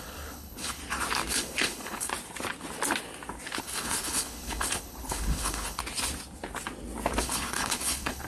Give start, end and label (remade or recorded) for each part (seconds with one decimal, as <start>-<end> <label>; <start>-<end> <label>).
0.0-0.8 remade; 0.8-1.3 recorded; 1.3-2.1 remade; 2.1-3.6 recorded; 3.6-5.8 remade; 5.8-7.2 recorded; 7.2-8.3 remade